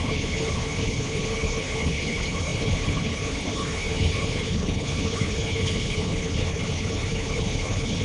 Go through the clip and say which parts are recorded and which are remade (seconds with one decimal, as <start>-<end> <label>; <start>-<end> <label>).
0.0-8.0 remade